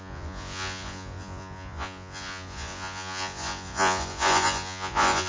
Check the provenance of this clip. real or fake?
fake